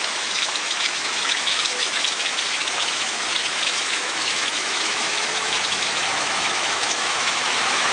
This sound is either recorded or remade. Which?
remade